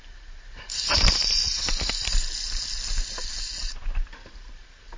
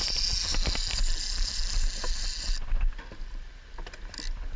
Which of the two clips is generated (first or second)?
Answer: first